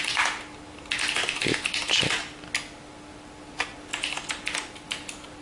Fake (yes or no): no